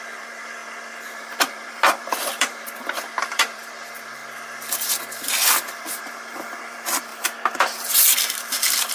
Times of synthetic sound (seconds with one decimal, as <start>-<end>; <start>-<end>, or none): 0.0-4.2; 6.0-8.9